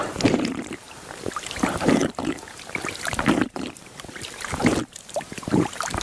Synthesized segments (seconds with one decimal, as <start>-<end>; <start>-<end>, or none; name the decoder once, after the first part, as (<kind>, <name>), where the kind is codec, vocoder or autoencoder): 0.0-6.0 (vocoder, BigVGAN v2)